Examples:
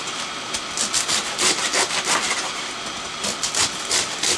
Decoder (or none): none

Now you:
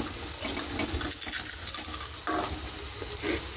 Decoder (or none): none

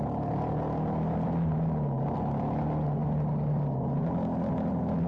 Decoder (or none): none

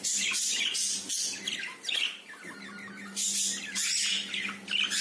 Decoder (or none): none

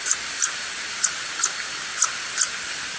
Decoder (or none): vocoder, BigVGAN v2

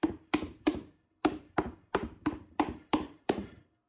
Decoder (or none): vocoder, BigVGAN v2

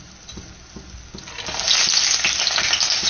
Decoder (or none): none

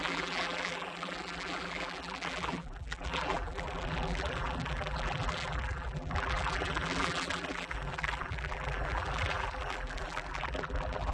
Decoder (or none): vocoder, BigVGAN v2